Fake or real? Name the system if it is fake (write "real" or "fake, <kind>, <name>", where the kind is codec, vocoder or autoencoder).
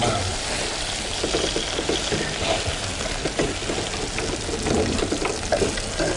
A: real